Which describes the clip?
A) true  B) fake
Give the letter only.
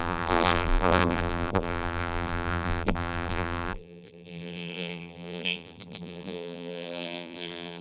B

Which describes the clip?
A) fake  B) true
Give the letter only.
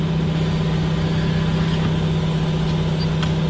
B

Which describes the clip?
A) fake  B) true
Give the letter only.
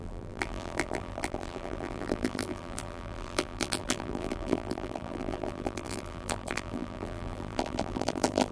A